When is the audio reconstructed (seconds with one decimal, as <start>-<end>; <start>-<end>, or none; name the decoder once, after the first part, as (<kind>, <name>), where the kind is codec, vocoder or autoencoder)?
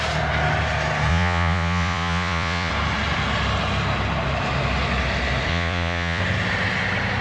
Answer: 1.1-2.7 (vocoder, Vocos); 5.5-6.2